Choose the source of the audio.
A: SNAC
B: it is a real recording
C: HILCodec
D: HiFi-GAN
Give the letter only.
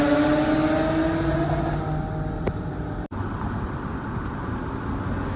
B